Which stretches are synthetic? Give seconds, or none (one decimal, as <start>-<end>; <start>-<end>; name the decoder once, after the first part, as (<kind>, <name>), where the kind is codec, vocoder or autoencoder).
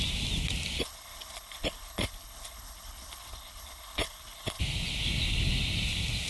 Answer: 0.8-4.6 (codec, HILCodec)